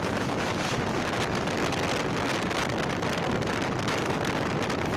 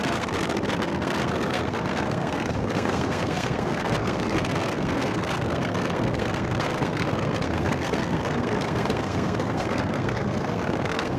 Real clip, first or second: first